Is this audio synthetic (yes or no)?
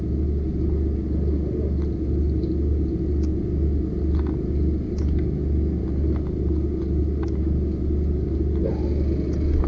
no